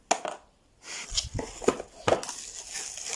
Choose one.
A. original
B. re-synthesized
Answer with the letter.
A